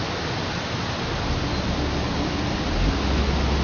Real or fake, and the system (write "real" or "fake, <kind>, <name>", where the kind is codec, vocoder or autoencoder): real